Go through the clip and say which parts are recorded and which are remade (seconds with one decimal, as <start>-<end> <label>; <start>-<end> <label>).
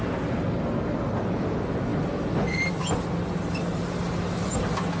0.0-5.0 recorded